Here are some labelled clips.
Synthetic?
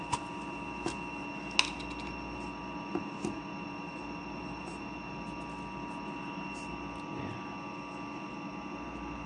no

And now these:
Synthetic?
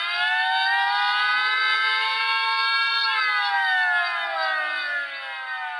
no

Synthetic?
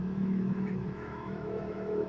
yes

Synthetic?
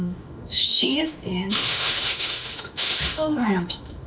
yes